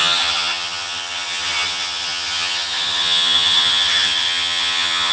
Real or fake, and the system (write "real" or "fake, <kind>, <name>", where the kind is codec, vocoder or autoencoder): fake, vocoder, HiFi-GAN